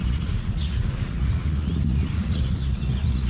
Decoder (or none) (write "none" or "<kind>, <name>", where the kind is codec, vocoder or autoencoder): vocoder, Vocos